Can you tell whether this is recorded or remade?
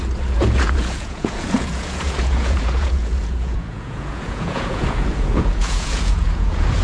remade